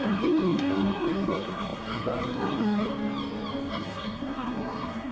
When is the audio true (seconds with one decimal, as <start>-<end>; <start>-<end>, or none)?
2.9-3.7